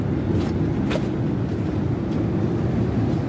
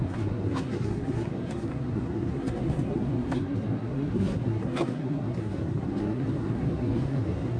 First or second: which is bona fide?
first